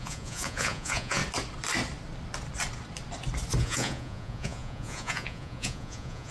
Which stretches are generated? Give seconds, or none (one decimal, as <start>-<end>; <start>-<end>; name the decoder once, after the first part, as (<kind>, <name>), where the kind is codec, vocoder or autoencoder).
0.0-1.2 (vocoder, Vocos); 3.6-6.3